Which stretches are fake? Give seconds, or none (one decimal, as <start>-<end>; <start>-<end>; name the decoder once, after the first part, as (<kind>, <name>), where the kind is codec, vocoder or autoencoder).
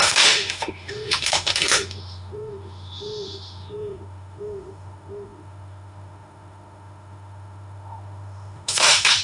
0.0-9.2 (autoencoder, DAC-VAE)